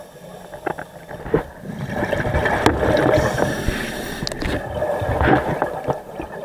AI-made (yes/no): no